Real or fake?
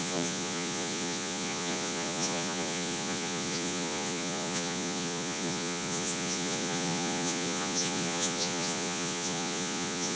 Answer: fake